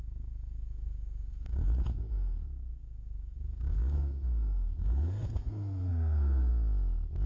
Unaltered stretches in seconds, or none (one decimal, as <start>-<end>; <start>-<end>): 6.5-7.3